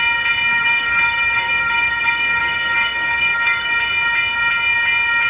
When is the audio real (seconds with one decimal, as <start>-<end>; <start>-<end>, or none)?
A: 0.0-0.5; 3.7-5.3